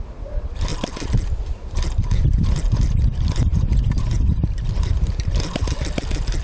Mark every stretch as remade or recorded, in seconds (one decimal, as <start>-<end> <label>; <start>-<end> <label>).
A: 0.0-6.4 recorded